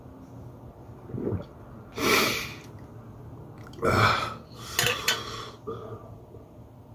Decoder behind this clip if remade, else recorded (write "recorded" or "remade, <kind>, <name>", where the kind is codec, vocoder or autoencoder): recorded